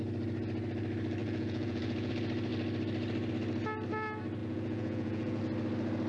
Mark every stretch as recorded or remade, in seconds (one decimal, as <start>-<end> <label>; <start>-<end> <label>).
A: 0.0-1.2 recorded; 1.2-2.1 remade; 2.1-4.4 recorded; 4.4-5.4 remade; 5.4-6.1 recorded